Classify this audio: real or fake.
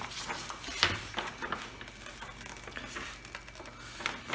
real